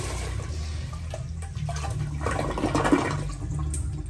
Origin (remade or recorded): recorded